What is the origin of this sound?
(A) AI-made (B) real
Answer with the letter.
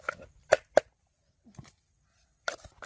B